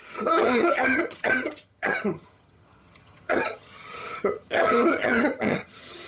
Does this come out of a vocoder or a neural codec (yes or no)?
yes